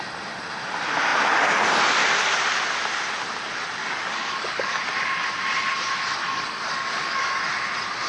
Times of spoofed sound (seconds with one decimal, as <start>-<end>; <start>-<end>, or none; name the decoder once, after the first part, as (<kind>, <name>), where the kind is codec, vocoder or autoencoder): 3.8-4.8 (codec, DAC); 6.2-7.4